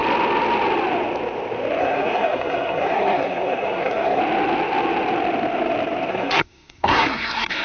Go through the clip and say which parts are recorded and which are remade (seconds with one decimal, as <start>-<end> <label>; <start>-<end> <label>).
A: 0.0-1.8 recorded; 1.8-4.2 remade; 4.2-6.1 recorded; 6.1-7.6 remade